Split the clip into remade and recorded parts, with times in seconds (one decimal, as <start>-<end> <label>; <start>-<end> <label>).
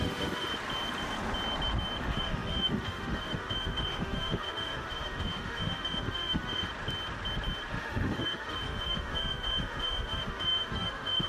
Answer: 0.0-0.5 remade; 0.5-2.0 recorded; 2.0-6.7 remade; 6.7-7.7 recorded; 7.7-11.3 remade